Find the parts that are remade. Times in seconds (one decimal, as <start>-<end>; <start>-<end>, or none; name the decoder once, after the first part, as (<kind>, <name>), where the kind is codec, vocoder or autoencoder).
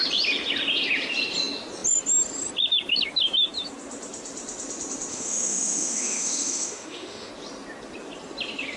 5.1-7.3 (autoencoder, DAC-VAE)